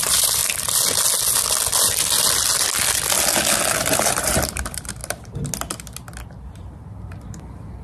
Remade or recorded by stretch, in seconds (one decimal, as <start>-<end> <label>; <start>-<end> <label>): 0.0-0.4 remade; 0.4-3.8 recorded; 3.8-5.0 remade; 5.0-6.5 recorded; 6.5-7.8 remade